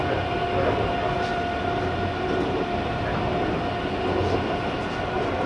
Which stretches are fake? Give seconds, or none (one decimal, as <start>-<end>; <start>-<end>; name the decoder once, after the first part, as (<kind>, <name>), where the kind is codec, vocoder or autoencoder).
none